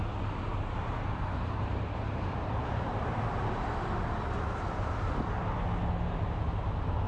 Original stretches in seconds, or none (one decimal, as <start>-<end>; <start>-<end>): 0.0-0.5; 3.7-7.1